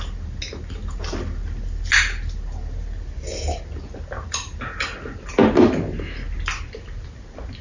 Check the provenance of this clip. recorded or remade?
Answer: recorded